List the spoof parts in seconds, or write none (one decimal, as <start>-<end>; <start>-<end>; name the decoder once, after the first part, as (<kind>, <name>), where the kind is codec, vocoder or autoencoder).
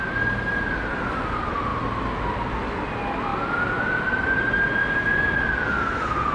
none